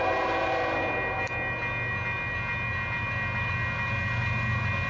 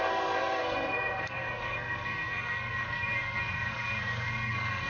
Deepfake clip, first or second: second